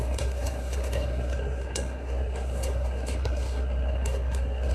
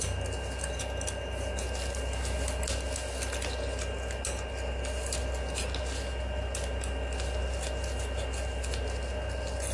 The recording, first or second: second